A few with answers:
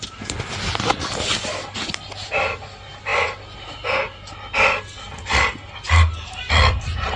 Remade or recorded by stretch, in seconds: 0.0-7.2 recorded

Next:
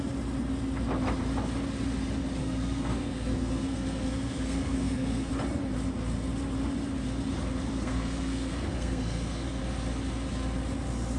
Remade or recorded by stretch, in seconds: 0.0-2.4 recorded; 2.4-5.3 remade; 5.3-7.7 recorded; 7.7-9.6 remade; 9.6-11.2 recorded